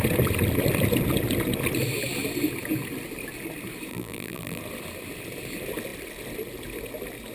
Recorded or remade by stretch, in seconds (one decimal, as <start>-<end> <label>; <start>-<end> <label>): 0.0-3.9 recorded; 3.9-4.6 remade; 4.6-7.3 recorded